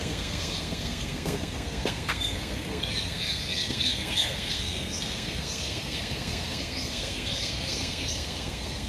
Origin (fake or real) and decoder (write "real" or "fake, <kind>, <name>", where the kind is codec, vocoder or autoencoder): fake, codec, SNAC